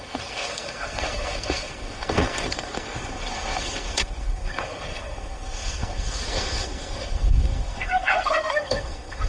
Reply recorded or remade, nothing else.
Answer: remade